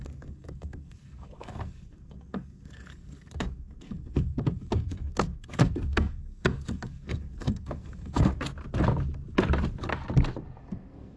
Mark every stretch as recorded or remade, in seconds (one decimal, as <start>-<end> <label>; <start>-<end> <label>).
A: 0.0-8.3 remade; 8.3-10.6 recorded; 10.6-11.2 remade